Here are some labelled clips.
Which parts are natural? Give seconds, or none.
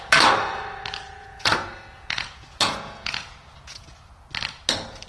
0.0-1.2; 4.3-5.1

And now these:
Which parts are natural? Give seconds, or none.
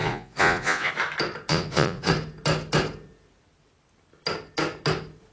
0.9-1.5; 2.1-5.3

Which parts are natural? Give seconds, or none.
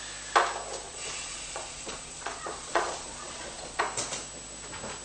0.0-0.8; 3.8-5.0